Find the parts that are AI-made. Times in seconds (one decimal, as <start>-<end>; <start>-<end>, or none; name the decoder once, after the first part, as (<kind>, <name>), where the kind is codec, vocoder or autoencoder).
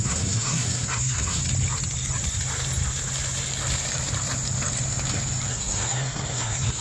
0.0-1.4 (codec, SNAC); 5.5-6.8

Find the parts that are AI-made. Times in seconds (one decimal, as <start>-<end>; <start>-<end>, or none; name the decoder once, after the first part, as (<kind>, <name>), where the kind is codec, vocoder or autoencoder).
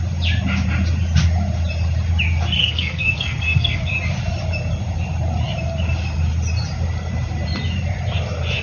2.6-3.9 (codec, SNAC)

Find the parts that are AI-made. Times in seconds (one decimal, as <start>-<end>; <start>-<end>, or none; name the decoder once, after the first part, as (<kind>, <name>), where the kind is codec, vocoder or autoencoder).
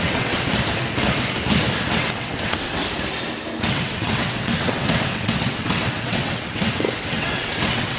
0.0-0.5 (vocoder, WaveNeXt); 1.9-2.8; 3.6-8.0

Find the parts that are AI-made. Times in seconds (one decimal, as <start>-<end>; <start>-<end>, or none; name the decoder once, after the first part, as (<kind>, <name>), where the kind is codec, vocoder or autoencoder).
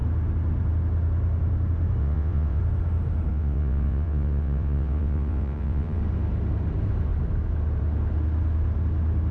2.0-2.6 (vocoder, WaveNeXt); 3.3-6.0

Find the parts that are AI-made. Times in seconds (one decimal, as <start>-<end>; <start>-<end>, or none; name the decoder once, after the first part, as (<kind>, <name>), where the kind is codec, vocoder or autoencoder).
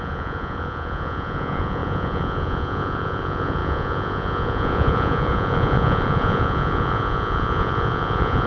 0.0-8.5 (vocoder, Vocos)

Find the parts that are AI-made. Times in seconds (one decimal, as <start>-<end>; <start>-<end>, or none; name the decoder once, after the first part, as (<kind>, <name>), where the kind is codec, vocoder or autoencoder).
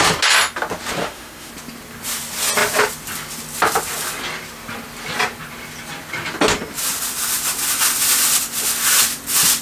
1.0-1.5 (autoencoder, DAC-VAE)